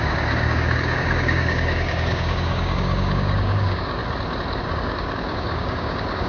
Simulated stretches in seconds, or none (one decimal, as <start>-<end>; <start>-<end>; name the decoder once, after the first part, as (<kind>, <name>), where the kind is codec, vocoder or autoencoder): 0.0-4.0 (codec, DAC); 4.6-6.3